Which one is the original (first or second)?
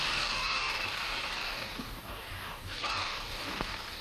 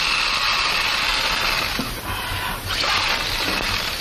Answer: second